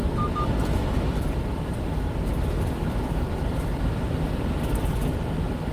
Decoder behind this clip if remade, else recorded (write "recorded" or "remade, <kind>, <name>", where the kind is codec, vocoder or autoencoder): recorded